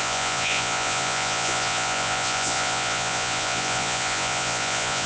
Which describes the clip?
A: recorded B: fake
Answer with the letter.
B